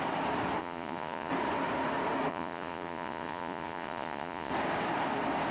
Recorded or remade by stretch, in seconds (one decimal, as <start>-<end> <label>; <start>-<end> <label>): 0.0-0.6 recorded; 0.6-1.3 remade; 1.3-2.3 recorded; 2.3-4.5 remade; 4.5-5.5 recorded